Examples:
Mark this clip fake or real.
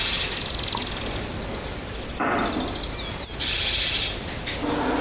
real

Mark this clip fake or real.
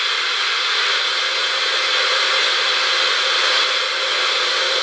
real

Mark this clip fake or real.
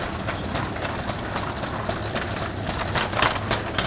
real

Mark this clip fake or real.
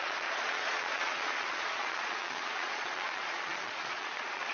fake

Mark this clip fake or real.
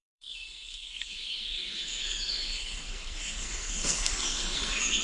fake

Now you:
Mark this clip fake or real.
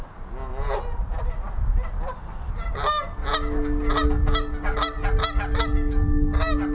real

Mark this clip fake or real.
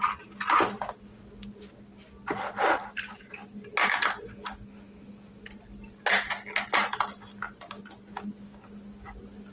real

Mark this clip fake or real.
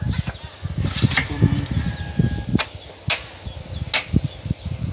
real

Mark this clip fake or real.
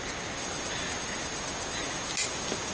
real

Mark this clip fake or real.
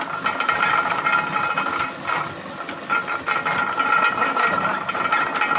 real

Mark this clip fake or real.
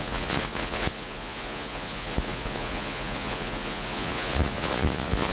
fake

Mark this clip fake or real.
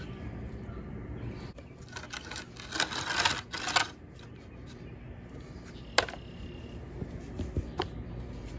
real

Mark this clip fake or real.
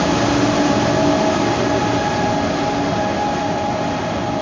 real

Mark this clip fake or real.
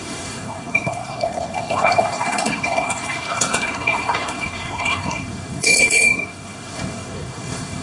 fake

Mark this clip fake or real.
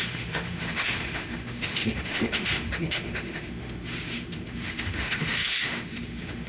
fake